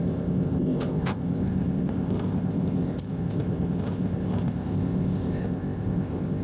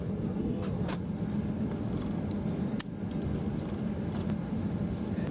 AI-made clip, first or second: first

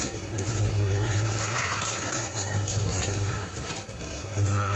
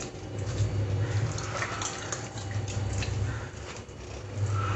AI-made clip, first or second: first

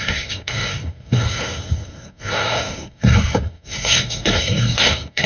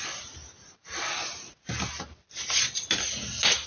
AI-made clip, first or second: first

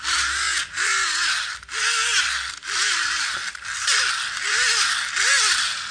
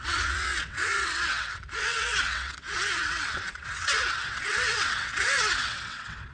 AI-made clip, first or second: second